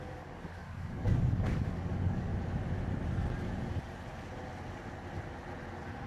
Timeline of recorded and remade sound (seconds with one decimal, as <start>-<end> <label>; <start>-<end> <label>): 0.0-2.3 remade; 2.3-6.1 recorded